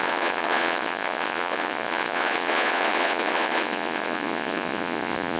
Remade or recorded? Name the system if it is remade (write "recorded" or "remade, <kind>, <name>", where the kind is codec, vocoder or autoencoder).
remade, vocoder, Vocos